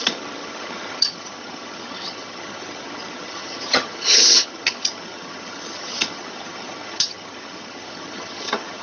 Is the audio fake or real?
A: fake